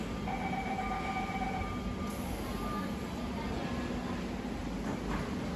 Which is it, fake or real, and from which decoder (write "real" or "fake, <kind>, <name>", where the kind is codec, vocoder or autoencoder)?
real